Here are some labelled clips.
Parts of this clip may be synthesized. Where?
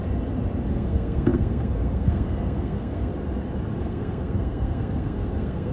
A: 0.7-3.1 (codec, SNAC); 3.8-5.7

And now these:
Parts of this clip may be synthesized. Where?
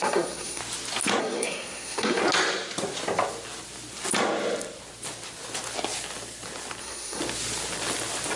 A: 0.0-0.6 (codec, SNAC); 1.2-2.2; 6.8-7.2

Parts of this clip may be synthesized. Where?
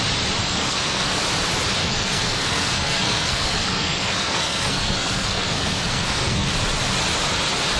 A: 0.4-1.2 (codec, SNAC); 1.8-6.5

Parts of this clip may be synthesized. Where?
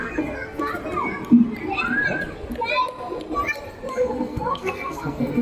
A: 0.0-0.7 (codec, SNAC); 3.9-5.4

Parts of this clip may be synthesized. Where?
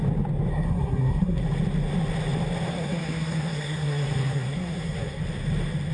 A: 0.5-1.4 (codec, SNAC); 2.7-5.2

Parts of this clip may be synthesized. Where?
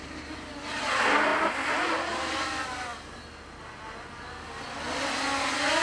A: none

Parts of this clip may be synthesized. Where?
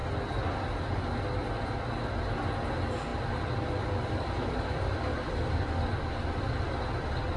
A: none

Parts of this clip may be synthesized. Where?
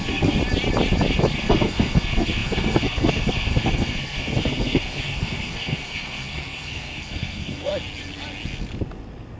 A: 0.0-0.4 (codec, SNAC); 1.4-7.7